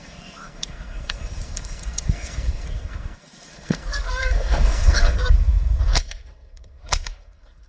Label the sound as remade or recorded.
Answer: remade